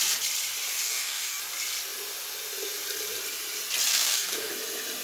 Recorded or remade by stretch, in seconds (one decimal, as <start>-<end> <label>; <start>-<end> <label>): 0.0-0.7 recorded; 0.7-1.4 remade; 1.4-3.9 recorded; 3.9-4.5 remade; 4.5-5.0 recorded